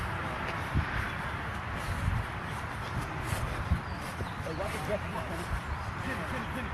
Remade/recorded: recorded